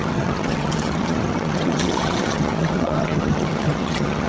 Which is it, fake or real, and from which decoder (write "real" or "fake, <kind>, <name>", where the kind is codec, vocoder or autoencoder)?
fake, vocoder, HiFi-GAN